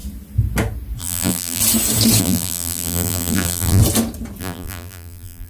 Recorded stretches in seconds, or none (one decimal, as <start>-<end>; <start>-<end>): 0.0-1.0; 1.6-2.2; 3.8-4.4